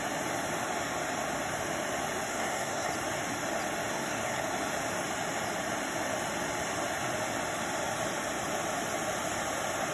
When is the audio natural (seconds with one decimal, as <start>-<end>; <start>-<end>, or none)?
0.0-2.3; 2.9-3.9; 4.4-9.9